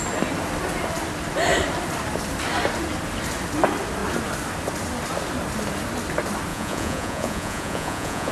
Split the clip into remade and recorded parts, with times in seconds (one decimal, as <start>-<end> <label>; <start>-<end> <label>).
0.0-6.5 recorded; 6.5-8.3 remade